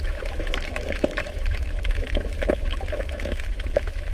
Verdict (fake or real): fake